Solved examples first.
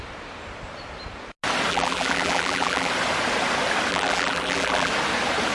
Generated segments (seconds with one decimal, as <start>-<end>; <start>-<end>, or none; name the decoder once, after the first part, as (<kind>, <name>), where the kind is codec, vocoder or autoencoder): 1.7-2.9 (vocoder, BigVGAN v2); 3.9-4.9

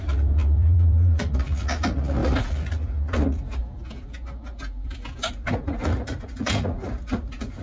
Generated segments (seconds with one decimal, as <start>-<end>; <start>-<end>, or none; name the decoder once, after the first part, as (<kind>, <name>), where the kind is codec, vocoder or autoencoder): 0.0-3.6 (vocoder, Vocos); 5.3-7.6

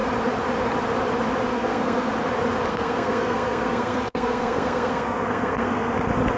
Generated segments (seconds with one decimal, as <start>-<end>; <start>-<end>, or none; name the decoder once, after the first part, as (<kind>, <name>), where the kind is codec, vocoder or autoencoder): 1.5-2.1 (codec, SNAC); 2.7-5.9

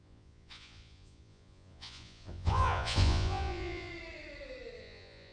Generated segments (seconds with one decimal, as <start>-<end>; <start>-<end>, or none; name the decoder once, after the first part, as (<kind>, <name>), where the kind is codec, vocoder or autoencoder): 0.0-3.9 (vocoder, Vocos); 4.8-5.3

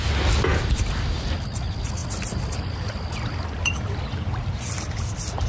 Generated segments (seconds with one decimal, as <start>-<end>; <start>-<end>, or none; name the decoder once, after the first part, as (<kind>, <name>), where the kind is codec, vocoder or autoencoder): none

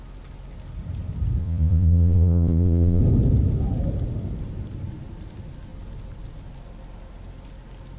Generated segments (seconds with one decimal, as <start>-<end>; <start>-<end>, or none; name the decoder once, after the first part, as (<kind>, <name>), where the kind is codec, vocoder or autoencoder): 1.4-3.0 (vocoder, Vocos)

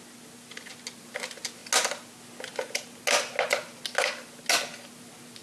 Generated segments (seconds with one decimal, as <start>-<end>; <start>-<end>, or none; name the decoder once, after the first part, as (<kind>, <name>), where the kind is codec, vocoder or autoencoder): none